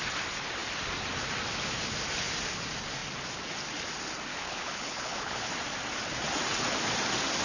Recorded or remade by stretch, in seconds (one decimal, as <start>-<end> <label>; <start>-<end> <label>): 0.0-4.3 recorded; 4.3-5.5 remade; 5.5-7.4 recorded